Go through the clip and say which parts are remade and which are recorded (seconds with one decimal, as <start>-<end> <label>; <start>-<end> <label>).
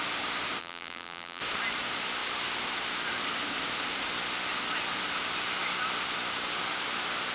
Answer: 0.0-0.6 recorded; 0.6-1.4 remade; 1.4-7.3 recorded